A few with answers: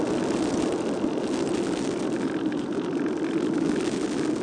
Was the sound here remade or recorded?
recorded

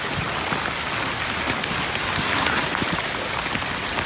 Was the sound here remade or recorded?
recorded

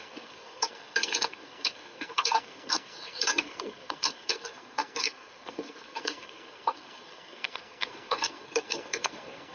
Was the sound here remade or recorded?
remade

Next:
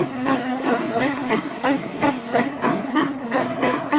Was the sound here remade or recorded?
remade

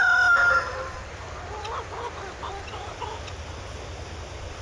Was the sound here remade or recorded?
recorded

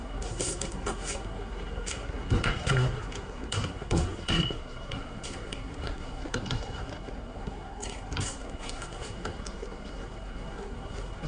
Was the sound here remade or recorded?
remade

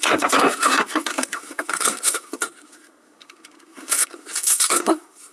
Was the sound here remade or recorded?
remade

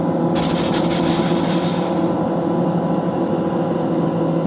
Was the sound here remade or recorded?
recorded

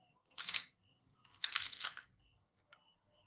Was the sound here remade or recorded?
remade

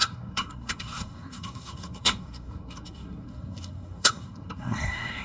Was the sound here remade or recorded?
remade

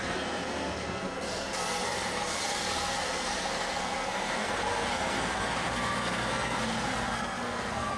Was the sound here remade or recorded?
remade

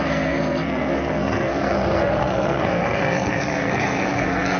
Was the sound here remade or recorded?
remade